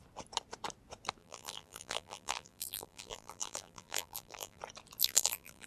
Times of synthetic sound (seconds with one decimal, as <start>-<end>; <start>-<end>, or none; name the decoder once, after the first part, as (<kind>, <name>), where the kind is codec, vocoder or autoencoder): 1.2-4.6 (vocoder, BigVGAN v2); 5.0-5.7